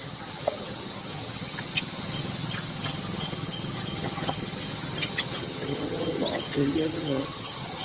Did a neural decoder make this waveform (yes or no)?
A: yes